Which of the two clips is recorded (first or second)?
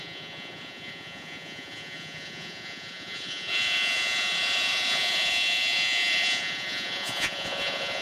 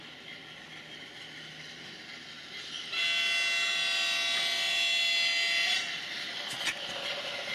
second